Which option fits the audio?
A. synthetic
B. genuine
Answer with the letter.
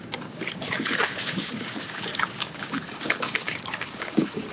A